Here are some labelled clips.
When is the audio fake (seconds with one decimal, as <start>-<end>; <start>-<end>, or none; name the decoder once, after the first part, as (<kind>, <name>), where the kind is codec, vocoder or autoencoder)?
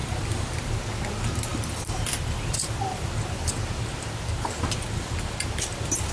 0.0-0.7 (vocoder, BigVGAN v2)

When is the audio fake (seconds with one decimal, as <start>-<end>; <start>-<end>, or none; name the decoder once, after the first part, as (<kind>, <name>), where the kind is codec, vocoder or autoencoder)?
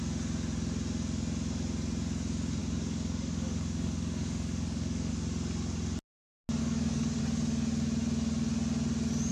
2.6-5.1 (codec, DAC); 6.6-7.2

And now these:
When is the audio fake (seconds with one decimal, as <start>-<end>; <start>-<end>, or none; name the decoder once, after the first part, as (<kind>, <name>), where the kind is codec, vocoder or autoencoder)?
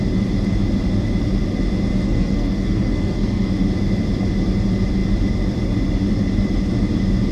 1.9-3.5 (codec, SNAC)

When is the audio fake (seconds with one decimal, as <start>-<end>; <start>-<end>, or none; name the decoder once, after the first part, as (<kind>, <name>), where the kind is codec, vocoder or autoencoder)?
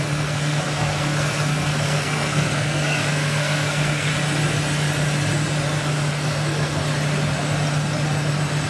0.0-4.1 (codec, SNAC); 6.1-6.8